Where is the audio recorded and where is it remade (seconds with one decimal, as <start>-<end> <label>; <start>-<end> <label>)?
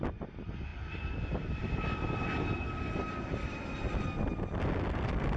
0.0-0.7 recorded; 0.7-1.8 remade; 1.8-2.6 recorded; 2.6-4.0 remade; 4.0-5.4 recorded